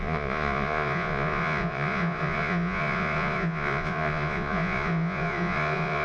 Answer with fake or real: fake